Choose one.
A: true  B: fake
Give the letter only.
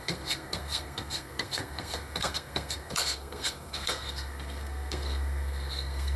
B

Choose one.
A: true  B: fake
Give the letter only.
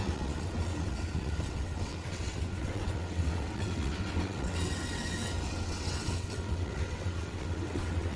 B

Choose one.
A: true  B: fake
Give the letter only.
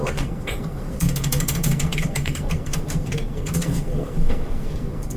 B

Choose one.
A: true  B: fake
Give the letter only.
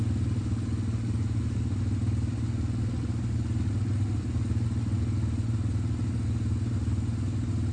A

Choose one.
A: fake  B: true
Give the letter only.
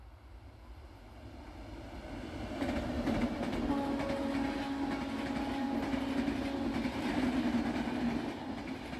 B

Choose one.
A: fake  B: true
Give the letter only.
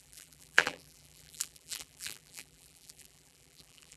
A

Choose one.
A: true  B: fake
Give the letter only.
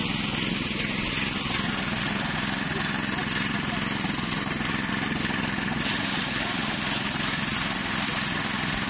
A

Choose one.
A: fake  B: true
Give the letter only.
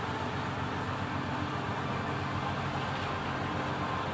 B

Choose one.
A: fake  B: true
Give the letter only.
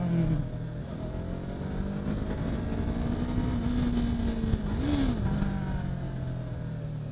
B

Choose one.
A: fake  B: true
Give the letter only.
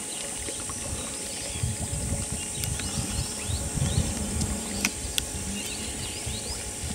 B